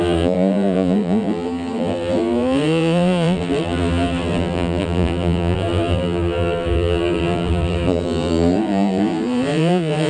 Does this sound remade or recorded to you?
remade